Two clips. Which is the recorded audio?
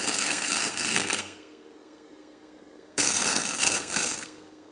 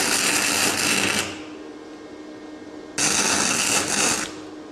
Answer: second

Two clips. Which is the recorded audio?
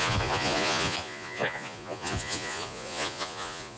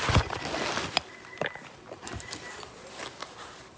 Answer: second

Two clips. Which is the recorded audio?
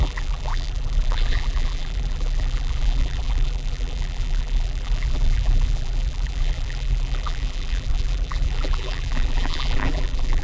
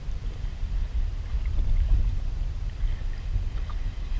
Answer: second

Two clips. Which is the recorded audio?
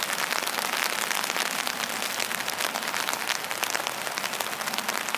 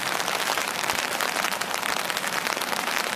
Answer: first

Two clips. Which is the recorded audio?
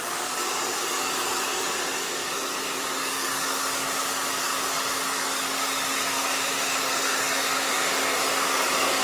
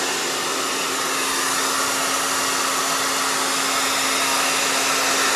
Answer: second